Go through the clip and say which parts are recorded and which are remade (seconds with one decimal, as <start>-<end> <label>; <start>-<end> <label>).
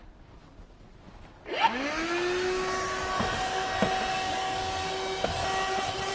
0.0-4.1 recorded; 4.1-4.9 remade; 4.9-6.1 recorded